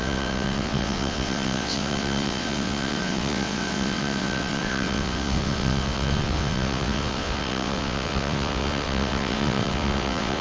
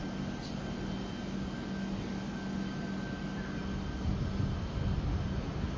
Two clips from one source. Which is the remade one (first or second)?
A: first